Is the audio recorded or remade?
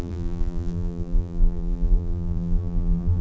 remade